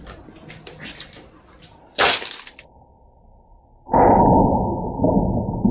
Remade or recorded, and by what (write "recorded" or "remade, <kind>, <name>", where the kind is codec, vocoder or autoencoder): recorded